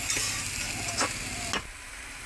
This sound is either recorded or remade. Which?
recorded